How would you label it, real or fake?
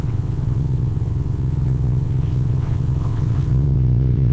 fake